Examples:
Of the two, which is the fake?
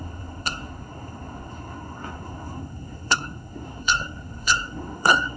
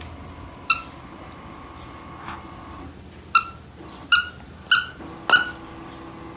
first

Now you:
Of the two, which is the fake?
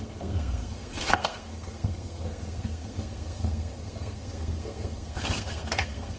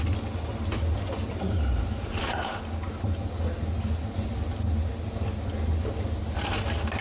first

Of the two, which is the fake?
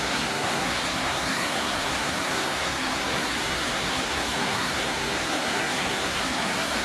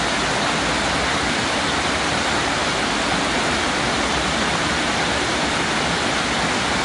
first